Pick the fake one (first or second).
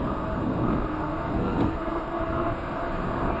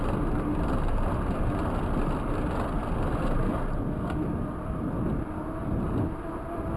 first